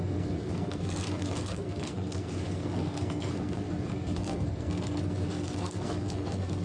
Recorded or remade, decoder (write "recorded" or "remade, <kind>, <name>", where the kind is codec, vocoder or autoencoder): remade, codec, SNAC